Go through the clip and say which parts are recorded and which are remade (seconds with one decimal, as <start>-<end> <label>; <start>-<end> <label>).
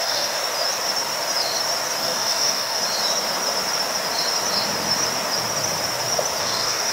0.0-0.4 remade; 0.4-2.0 recorded; 2.0-2.8 remade; 2.8-6.4 recorded; 6.4-6.9 remade